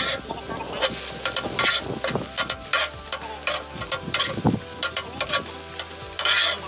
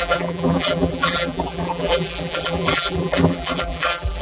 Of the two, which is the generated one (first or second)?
second